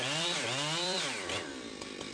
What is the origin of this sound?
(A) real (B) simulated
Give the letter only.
B